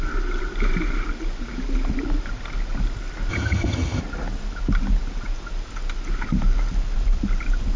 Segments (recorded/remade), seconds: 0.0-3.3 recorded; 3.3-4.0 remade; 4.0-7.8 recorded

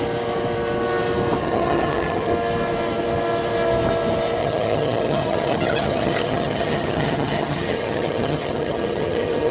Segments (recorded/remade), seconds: 0.0-1.4 recorded; 1.4-2.3 remade; 2.3-4.4 recorded; 4.4-9.5 remade

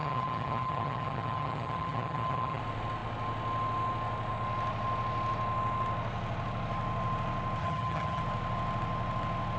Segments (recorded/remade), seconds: 0.0-2.6 remade; 2.6-7.6 recorded; 7.6-8.2 remade; 8.2-9.6 recorded

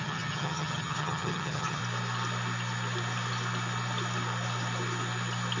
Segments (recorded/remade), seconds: 0.0-1.8 remade; 1.8-5.6 recorded

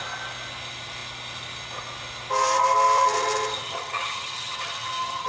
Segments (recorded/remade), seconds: 0.0-3.6 recorded; 3.6-5.3 remade

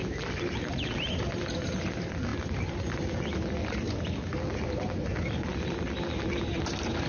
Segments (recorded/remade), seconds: 0.0-7.1 recorded

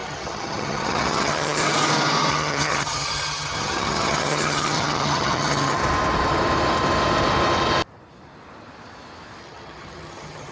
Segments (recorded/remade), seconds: 0.0-1.6 remade; 1.6-2.3 recorded; 2.3-5.8 remade; 5.8-9.4 recorded; 9.4-10.5 remade

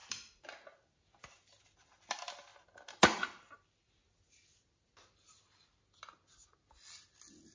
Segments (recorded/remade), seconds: 0.0-7.5 recorded